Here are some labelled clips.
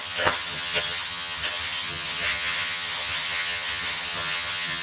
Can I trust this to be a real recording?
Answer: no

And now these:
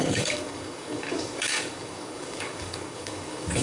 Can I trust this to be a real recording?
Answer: no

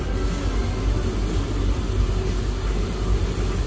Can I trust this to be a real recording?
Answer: yes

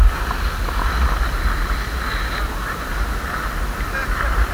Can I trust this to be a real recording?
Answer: yes